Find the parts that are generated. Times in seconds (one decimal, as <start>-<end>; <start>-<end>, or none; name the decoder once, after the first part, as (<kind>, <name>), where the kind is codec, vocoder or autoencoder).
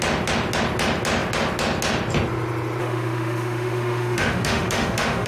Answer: 2.8-5.3 (autoencoder, DAC-VAE)